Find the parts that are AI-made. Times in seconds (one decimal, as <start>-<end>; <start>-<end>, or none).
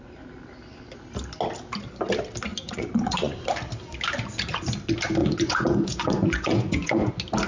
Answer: 2.5-3.4; 5.2-7.1